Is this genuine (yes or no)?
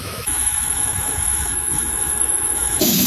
no